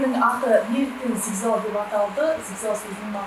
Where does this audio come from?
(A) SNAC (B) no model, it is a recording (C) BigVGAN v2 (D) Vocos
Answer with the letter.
B